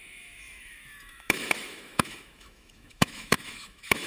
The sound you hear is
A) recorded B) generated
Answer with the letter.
B